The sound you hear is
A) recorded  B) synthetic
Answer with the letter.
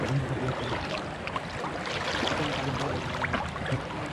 A